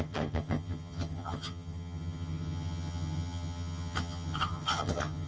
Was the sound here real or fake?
fake